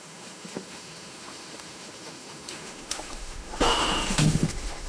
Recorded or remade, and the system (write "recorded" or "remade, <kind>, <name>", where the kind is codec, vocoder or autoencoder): remade, autoencoder, DAC-VAE